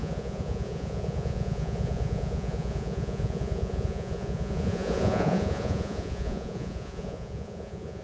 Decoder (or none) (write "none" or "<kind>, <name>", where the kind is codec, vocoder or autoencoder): vocoder, Vocos